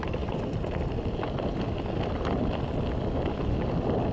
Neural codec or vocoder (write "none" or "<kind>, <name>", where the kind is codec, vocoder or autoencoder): none